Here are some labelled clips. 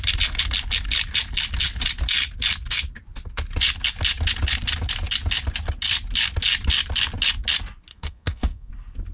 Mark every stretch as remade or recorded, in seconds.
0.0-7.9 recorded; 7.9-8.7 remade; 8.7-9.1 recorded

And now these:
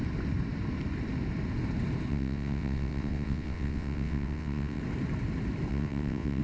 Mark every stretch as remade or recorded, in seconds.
0.0-2.1 recorded; 2.1-4.8 remade; 4.8-5.7 recorded; 5.7-6.4 remade

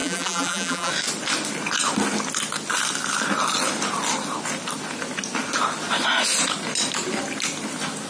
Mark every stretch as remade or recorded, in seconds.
0.0-0.9 remade; 0.9-8.1 recorded

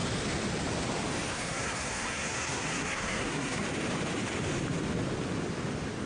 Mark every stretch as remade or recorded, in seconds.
0.0-1.3 recorded; 1.3-3.6 remade; 3.6-6.1 recorded

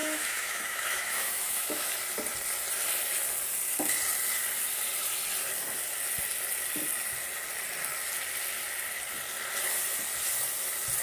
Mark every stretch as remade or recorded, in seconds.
0.0-1.9 remade; 1.9-11.0 recorded

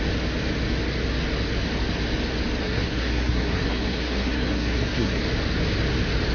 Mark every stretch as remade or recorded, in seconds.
0.0-2.6 recorded; 2.6-5.2 remade; 5.2-6.3 recorded